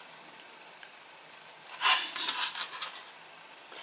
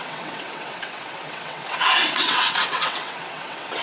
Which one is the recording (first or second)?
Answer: first